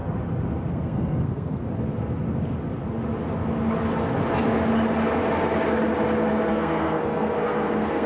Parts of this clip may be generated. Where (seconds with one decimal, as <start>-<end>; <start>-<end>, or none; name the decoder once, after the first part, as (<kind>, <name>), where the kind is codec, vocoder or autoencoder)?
0.7-1.6 (codec, SNAC); 6.5-8.1